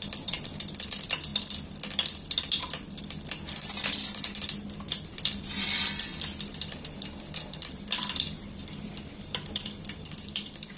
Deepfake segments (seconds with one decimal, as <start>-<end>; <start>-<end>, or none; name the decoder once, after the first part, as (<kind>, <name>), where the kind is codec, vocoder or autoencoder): 0.0-1.3 (vocoder, BigVGAN v2); 5.1-6.1; 7.2-10.8

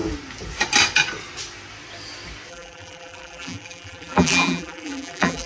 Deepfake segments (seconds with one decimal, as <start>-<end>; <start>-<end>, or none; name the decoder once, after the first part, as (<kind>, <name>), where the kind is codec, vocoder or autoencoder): 2.5-5.5 (vocoder, BigVGAN v2)

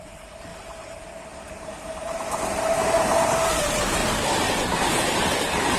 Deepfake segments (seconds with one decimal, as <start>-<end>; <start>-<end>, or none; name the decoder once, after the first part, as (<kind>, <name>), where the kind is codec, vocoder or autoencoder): 0.0-4.0 (vocoder, BigVGAN v2); 4.9-5.8

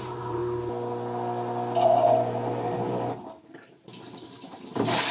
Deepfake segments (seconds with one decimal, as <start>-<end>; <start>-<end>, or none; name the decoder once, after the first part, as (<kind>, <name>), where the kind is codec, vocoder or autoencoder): 0.0-0.4 (vocoder, BigVGAN v2); 3.5-5.1